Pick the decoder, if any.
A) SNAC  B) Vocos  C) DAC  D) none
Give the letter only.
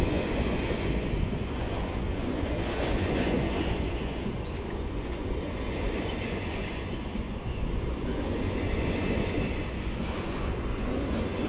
B